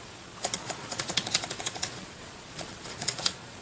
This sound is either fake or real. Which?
fake